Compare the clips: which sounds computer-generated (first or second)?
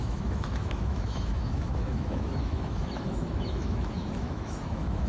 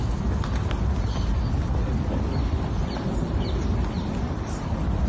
first